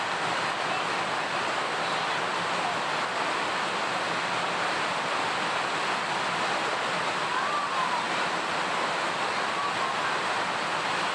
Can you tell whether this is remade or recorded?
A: recorded